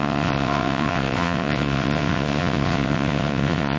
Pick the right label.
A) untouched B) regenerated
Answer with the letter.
B